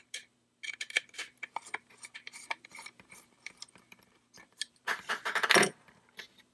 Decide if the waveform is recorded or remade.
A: remade